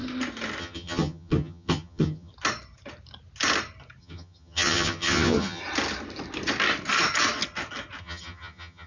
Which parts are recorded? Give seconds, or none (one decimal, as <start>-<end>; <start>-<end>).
0.0-0.6; 2.3-4.0; 5.6-8.0